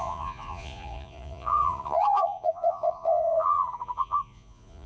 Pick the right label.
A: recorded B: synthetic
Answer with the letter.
B